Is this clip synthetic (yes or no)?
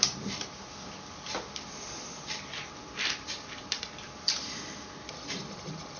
yes